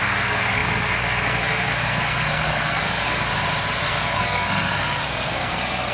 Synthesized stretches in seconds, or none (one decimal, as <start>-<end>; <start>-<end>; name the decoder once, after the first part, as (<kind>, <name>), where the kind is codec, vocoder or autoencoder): 0.0-3.3 (codec, SNAC); 3.8-5.9

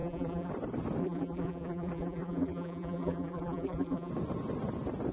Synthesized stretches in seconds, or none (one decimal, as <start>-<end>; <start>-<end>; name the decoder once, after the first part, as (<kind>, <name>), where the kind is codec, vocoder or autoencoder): 0.0-0.5 (vocoder, BigVGAN v2); 1.0-4.1

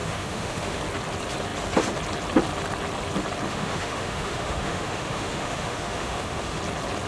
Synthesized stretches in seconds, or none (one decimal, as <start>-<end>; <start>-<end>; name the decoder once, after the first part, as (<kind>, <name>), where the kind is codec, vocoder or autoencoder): 0.0-0.8 (autoencoder, DAC-VAE); 3.5-6.6